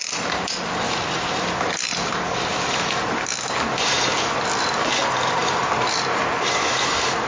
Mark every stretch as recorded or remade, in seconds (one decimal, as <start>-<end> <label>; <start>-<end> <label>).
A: 0.0-7.3 recorded